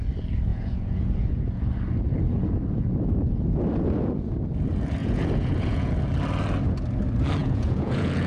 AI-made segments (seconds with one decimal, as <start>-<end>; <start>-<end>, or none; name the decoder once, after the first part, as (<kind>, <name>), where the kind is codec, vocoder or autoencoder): 0.5-1.6 (vocoder, Vocos); 5.0-5.9; 7.4-8.3